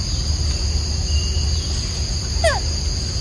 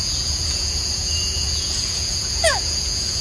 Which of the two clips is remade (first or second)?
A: second